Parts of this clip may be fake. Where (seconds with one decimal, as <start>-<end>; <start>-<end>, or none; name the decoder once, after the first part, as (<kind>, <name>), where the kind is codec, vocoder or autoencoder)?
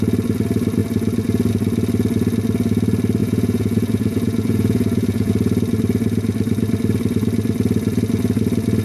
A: 3.2-5.3 (vocoder, Vocos)